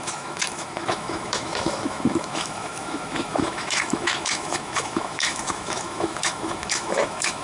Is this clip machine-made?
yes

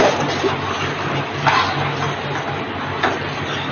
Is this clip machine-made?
no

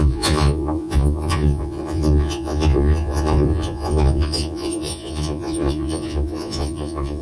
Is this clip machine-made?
yes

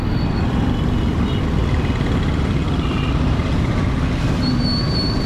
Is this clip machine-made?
no